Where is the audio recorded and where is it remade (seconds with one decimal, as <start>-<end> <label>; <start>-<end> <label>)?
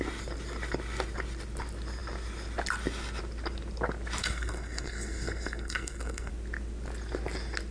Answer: 0.0-4.2 recorded; 4.2-6.3 remade; 6.3-7.7 recorded